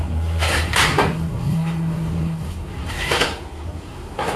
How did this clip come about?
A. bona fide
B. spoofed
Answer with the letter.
B